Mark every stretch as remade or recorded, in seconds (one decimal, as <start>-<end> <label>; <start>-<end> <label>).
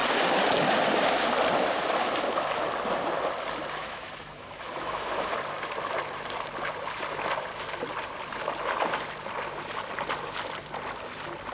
0.0-3.8 recorded; 3.8-5.3 remade; 5.3-11.5 recorded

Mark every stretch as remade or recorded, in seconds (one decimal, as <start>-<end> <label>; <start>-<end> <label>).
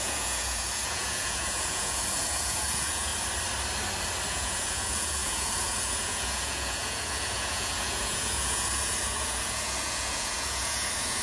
0.0-3.1 remade; 3.1-4.3 recorded; 4.3-11.2 remade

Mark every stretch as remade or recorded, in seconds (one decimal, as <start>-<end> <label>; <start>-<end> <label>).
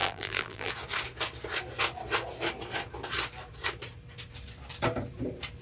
0.0-0.7 remade; 0.7-5.6 recorded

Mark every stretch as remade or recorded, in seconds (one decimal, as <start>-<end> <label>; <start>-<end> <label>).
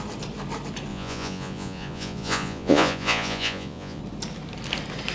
0.0-0.9 recorded; 0.9-4.0 remade; 4.0-5.1 recorded